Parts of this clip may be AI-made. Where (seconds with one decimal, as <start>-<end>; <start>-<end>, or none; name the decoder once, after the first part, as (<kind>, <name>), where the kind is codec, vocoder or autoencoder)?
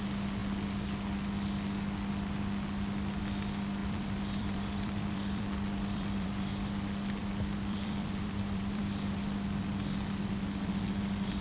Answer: 3.8-6.5 (vocoder, BigVGAN v2); 7.2-8.8